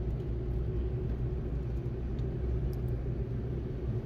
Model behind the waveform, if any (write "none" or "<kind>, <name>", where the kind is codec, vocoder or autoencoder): none